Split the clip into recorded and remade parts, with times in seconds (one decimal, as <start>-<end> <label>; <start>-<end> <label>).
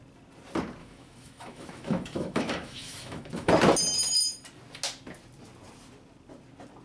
0.0-0.8 recorded; 0.8-3.5 remade; 3.5-6.8 recorded